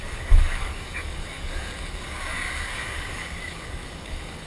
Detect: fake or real fake